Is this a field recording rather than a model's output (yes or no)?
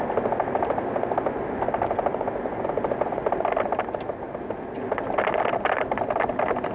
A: yes